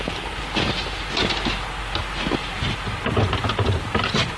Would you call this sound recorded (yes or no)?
yes